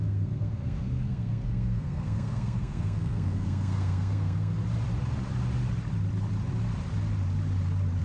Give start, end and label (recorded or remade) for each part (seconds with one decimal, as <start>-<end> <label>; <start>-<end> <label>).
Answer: 0.0-4.6 remade; 4.6-8.0 recorded